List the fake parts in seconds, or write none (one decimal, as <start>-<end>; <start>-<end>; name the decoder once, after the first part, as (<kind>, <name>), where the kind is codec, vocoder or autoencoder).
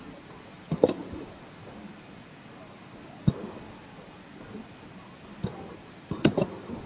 0.0-1.6 (vocoder, BigVGAN v2); 5.7-6.9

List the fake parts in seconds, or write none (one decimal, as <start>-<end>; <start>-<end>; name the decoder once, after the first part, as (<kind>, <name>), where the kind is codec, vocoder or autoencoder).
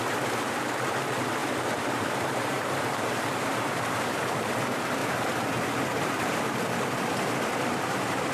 1.4-4.6 (vocoder, BigVGAN v2); 5.0-6.4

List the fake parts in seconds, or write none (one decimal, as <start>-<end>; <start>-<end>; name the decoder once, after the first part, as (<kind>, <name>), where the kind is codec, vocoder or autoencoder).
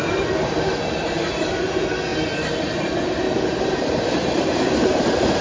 0.0-5.4 (vocoder, BigVGAN v2)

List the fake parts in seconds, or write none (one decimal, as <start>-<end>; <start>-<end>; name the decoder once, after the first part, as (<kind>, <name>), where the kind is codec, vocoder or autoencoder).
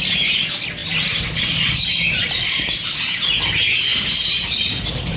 1.9-3.0 (vocoder, BigVGAN v2)